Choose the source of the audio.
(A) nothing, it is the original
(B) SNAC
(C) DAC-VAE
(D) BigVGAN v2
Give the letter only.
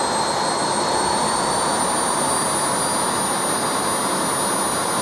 A